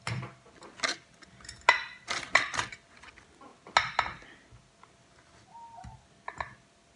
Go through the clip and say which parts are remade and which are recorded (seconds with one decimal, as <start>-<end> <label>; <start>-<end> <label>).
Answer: 0.0-7.0 recorded